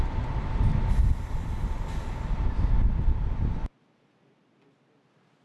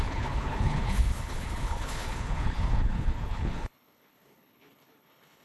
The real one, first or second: first